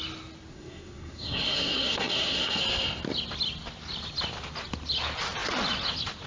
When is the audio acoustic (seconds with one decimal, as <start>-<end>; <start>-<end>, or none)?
0.0-0.5; 2.6-6.3